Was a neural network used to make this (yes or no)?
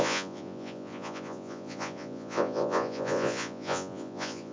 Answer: yes